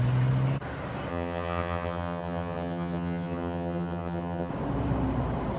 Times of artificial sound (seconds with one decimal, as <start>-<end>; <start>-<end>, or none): 1.1-4.5